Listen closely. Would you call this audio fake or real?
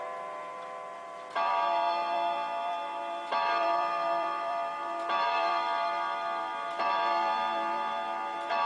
fake